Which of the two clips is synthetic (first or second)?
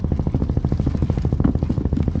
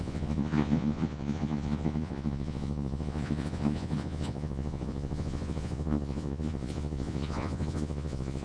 second